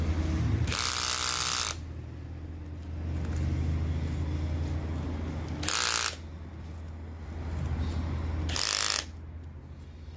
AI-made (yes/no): no